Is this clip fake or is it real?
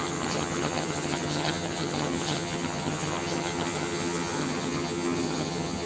fake